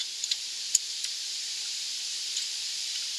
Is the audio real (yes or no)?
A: no